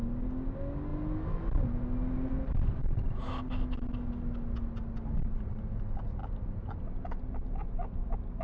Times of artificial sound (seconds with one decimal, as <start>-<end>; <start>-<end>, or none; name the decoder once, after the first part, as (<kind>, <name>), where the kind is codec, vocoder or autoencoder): 6.2-6.8 (vocoder, BigVGAN v2)